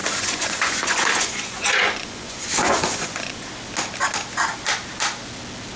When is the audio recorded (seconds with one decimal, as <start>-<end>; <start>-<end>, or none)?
3.5-5.8